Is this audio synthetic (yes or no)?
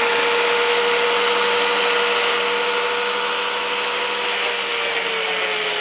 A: no